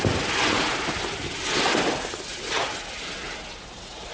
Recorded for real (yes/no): yes